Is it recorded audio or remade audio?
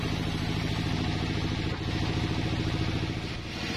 recorded